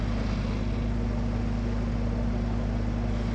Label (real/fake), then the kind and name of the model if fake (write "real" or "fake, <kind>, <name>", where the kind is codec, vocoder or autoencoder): real